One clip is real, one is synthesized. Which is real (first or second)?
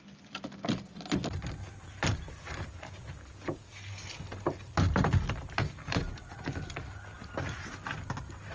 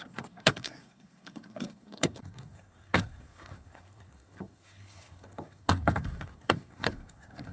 first